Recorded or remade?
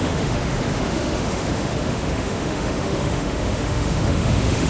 remade